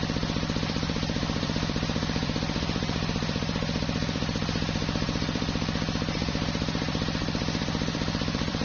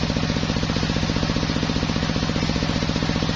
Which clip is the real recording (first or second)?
second